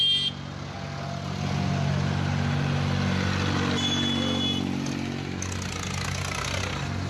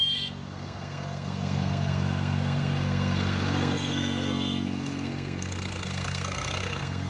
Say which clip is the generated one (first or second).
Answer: second